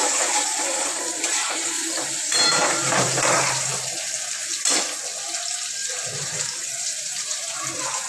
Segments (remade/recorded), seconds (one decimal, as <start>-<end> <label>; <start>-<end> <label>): 0.0-3.7 remade; 3.7-5.8 recorded; 5.8-8.1 remade